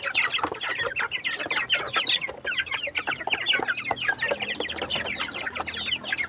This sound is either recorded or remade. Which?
recorded